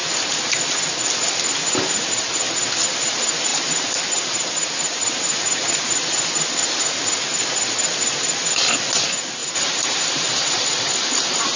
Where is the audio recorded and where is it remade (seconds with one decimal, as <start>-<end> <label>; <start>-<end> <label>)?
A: 0.0-3.5 recorded; 3.5-4.0 remade; 4.0-9.4 recorded; 9.4-10.6 remade; 10.6-11.6 recorded